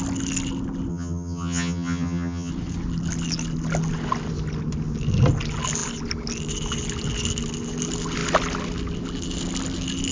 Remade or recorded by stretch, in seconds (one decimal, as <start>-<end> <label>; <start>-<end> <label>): 0.0-0.9 recorded; 0.9-2.5 remade; 2.5-10.1 recorded